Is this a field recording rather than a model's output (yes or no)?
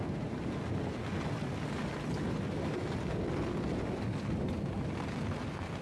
yes